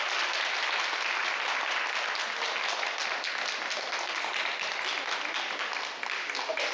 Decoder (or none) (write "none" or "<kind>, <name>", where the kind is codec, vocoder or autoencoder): none